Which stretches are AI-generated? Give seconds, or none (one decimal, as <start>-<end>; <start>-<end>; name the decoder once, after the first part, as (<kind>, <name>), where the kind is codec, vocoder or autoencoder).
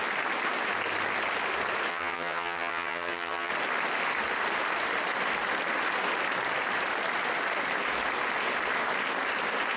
1.9-3.5 (vocoder, HiFi-GAN)